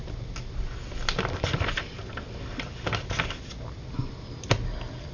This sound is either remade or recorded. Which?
recorded